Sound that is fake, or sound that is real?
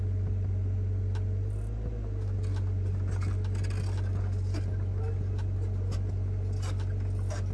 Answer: real